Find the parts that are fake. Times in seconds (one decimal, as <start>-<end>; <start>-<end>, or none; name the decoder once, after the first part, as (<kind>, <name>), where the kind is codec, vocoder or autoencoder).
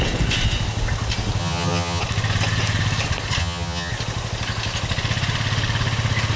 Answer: 1.4-2.0 (vocoder, HiFi-GAN); 3.4-3.9